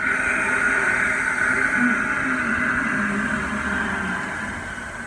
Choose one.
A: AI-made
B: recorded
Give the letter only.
B